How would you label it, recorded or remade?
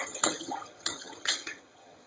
remade